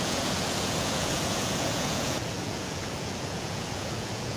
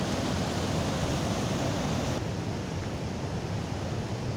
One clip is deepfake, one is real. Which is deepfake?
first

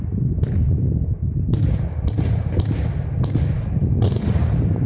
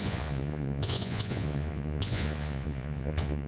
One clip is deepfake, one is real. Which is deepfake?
second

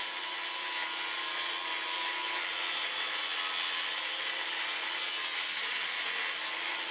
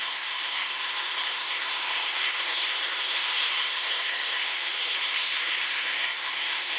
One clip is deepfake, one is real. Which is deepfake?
second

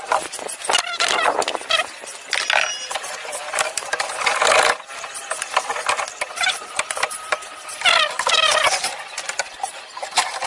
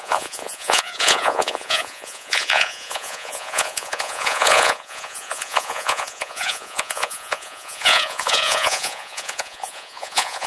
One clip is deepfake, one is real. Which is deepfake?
second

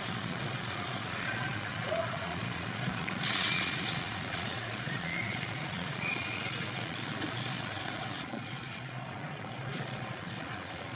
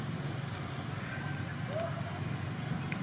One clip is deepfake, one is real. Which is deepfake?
first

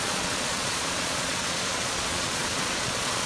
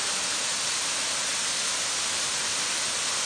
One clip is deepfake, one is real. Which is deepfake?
first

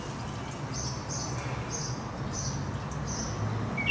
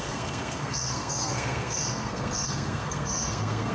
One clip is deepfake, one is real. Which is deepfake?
second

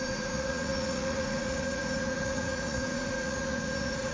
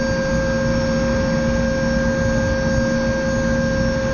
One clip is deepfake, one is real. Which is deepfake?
first